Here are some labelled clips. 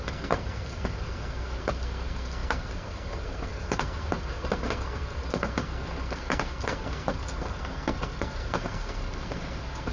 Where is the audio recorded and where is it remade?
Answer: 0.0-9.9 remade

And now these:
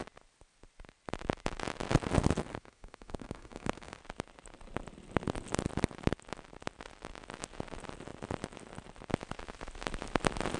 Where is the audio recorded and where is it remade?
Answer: 0.0-2.5 recorded; 2.5-4.0 remade; 4.0-10.6 recorded

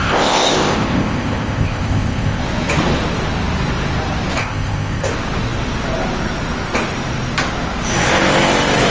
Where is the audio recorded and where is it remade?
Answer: 0.0-2.4 remade; 2.4-4.4 recorded; 4.4-5.1 remade; 5.1-8.9 recorded

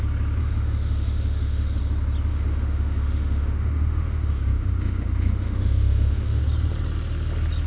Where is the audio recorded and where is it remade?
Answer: 0.0-0.4 recorded; 0.4-1.8 remade; 1.8-2.3 recorded; 2.3-6.4 remade; 6.4-7.7 recorded